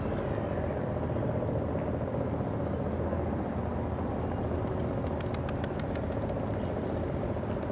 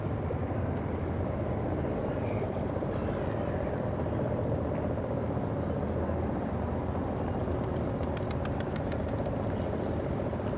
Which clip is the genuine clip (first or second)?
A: first